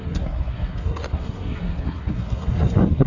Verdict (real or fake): fake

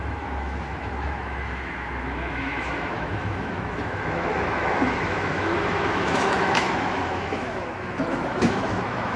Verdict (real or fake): fake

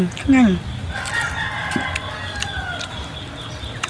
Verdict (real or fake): real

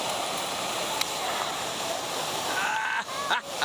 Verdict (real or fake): fake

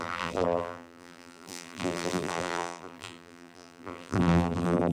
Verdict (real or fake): fake